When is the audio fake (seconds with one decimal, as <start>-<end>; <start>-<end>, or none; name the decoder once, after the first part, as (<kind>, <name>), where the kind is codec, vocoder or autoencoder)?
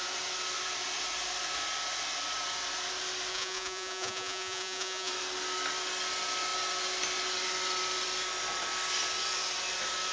3.3-5.1 (vocoder, Vocos)